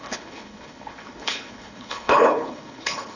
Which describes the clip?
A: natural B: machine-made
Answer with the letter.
B